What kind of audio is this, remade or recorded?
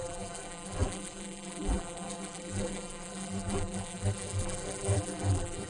remade